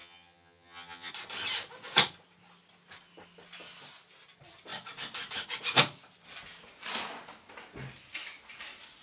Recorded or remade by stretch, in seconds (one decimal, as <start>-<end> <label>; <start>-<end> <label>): 0.0-1.1 remade; 1.1-9.0 recorded